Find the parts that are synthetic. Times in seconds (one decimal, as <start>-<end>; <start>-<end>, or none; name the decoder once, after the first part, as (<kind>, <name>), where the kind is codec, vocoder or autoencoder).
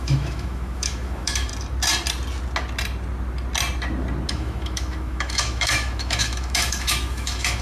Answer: 0.0-1.5 (autoencoder, DAC-VAE); 4.3-7.6